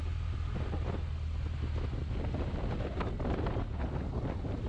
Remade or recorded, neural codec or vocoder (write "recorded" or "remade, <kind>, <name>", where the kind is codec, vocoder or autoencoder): recorded